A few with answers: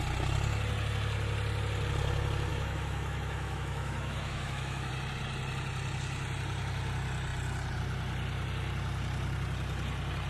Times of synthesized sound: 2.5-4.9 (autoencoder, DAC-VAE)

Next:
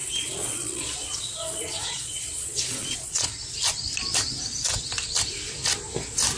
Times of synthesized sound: 0.0-3.3 (vocoder, Vocos)

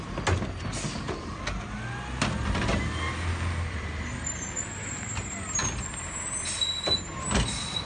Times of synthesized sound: none

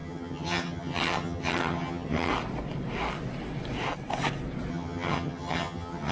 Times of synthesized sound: 0.0-2.3 (vocoder, HiFi-GAN); 4.7-6.1

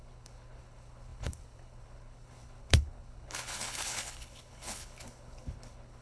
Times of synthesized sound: 0.0-6.0 (codec, HILCodec)

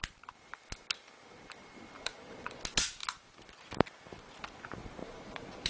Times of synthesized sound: 2.0-2.6 (vocoder, Vocos); 5.0-5.7

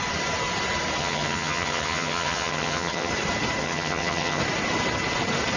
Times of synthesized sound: 1.0-3.1 (vocoder, HiFi-GAN); 3.6-4.4

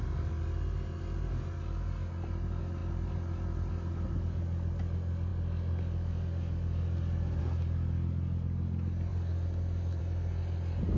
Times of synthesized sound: none